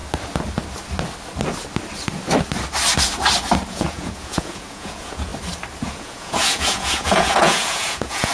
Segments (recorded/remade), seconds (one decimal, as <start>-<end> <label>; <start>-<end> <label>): 0.0-3.7 recorded; 3.7-5.3 remade; 5.3-5.8 recorded; 5.8-8.3 remade